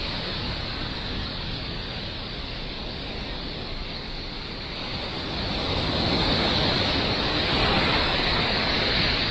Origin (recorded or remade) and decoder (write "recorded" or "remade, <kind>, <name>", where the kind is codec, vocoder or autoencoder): remade, codec, DAC